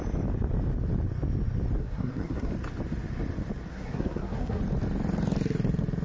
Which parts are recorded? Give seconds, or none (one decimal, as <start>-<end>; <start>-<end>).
0.0-1.8; 2.5-3.7; 4.6-6.0